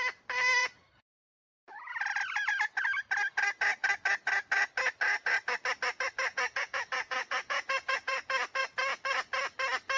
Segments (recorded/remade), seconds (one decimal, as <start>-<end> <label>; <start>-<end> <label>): 0.0-0.6 recorded; 0.6-1.9 remade; 1.9-6.3 recorded; 6.3-8.2 remade; 8.2-10.0 recorded

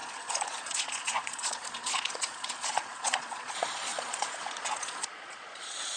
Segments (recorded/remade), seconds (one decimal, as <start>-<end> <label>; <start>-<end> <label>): 0.0-6.0 remade

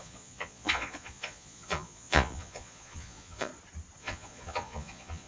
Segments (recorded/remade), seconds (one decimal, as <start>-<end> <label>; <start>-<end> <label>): 0.0-3.5 remade; 3.5-4.0 recorded; 4.0-5.3 remade

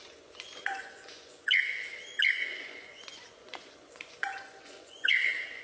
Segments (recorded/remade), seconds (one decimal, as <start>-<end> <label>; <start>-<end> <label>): 0.0-1.6 remade; 1.6-2.2 recorded; 2.2-5.6 remade

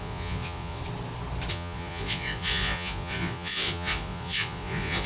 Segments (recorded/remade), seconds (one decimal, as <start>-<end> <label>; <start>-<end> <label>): 0.0-0.8 remade; 0.8-1.5 recorded; 1.5-5.1 remade

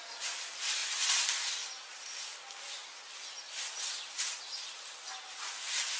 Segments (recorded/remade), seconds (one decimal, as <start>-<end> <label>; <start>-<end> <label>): 0.0-6.0 recorded

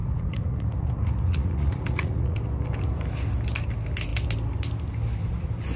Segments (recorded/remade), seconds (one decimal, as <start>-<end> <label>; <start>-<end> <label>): 0.0-2.4 remade; 2.4-5.8 recorded